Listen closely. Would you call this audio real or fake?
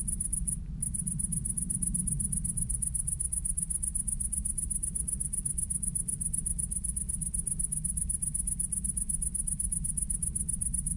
real